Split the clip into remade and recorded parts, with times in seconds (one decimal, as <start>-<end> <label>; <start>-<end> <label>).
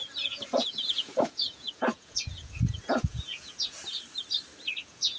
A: 0.0-3.8 remade; 3.8-4.8 recorded; 4.8-5.2 remade